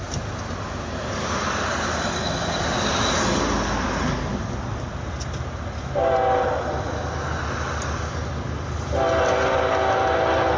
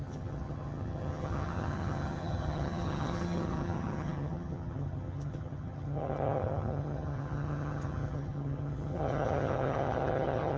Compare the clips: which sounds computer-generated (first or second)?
second